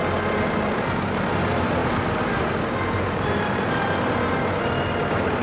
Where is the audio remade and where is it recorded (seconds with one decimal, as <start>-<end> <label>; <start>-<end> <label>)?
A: 0.0-5.4 recorded